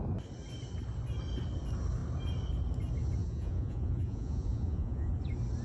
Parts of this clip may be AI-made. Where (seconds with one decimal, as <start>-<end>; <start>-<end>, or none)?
3.2-5.1